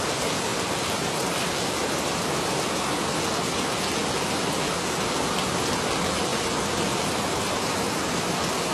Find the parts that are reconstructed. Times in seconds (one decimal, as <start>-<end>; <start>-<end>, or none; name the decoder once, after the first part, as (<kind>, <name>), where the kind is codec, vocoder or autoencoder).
none